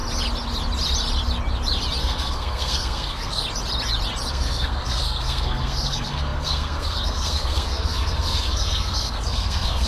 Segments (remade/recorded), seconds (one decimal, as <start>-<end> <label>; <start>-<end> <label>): 0.0-2.0 recorded; 2.0-3.4 remade; 3.4-4.3 recorded; 4.3-9.9 remade